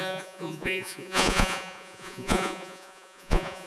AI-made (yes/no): yes